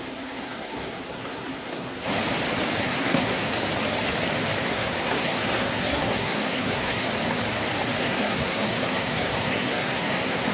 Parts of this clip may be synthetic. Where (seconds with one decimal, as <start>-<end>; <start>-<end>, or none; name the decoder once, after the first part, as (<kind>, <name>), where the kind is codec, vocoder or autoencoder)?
0.0-2.1 (codec, SNAC); 2.8-3.4; 4.6-7.1; 8.0-10.5

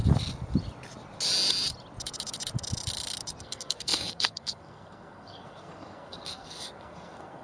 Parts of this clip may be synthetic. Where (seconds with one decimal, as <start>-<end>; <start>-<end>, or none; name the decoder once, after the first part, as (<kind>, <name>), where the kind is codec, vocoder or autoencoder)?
3.4-7.4 (codec, SNAC)

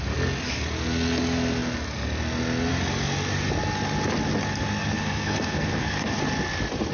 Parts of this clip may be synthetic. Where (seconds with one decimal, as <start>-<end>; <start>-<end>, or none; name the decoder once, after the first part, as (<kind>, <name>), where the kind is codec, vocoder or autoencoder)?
4.8-6.2 (codec, SNAC)